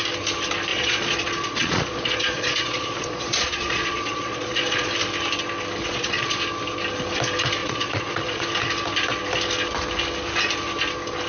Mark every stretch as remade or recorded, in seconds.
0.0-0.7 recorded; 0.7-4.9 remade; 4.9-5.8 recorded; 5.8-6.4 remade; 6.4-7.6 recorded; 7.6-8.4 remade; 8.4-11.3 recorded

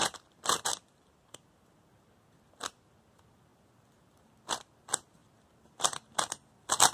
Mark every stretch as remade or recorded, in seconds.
0.0-1.6 remade; 1.6-5.2 recorded; 5.2-6.9 remade

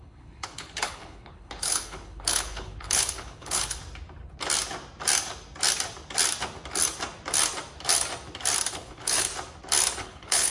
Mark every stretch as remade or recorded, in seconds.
0.0-3.8 remade; 3.8-8.7 recorded; 8.7-9.3 remade; 9.3-10.0 recorded; 10.0-10.5 remade

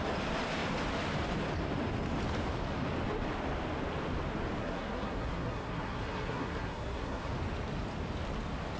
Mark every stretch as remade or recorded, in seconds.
0.0-4.6 recorded; 4.6-7.3 remade; 7.3-8.8 recorded

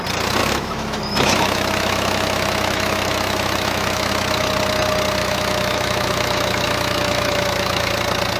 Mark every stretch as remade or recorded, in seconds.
0.0-0.4 recorded; 0.4-4.1 remade; 4.1-5.2 recorded; 5.2-7.9 remade; 7.9-8.4 recorded

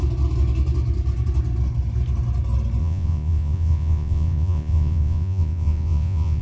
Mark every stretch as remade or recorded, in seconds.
0.0-2.8 recorded; 2.8-6.4 remade

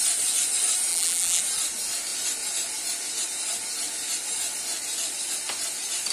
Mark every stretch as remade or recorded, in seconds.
0.0-0.9 recorded; 0.9-1.4 remade; 1.4-6.1 recorded

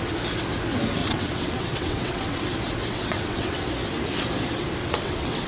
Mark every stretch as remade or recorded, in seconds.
0.0-1.0 recorded; 1.0-2.4 remade; 2.4-2.9 recorded; 2.9-3.6 remade; 3.6-4.8 recorded; 4.8-5.5 remade